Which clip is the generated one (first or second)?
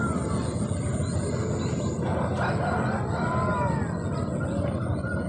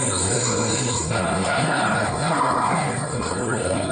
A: second